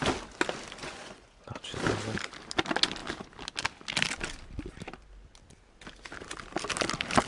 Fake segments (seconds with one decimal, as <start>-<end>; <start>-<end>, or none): 0.8-1.5